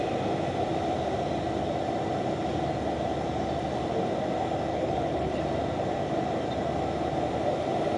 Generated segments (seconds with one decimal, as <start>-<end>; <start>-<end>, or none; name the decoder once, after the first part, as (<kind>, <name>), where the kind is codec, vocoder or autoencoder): 4.7-5.4 (codec, HILCodec)